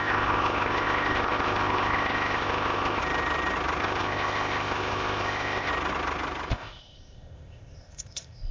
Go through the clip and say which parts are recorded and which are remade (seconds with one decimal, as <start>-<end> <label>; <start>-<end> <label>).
0.0-3.0 remade; 3.0-3.8 recorded; 3.8-5.7 remade; 5.7-6.5 recorded; 6.5-8.5 remade